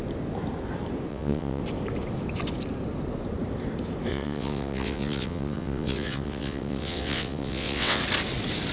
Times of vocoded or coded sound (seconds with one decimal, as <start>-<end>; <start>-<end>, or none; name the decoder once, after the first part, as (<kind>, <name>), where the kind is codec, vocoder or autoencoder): 1.1-1.6 (vocoder, WaveNeXt); 4.1-8.0